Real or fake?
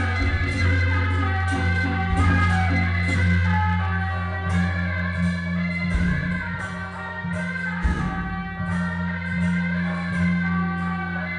real